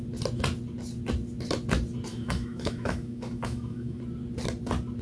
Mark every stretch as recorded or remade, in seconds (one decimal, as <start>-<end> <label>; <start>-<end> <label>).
0.0-2.1 recorded; 2.1-4.0 remade; 4.0-5.0 recorded